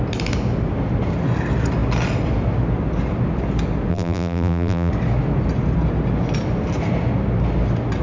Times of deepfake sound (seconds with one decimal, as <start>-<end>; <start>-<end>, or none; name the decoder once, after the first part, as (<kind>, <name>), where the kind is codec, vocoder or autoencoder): 3.9-4.9 (vocoder, BigVGAN v2)